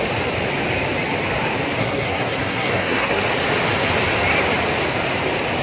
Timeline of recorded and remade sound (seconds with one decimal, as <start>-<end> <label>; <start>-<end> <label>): 0.0-1.8 recorded; 1.8-3.2 remade; 3.2-5.6 recorded